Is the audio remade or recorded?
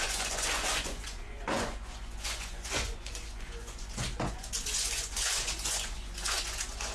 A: remade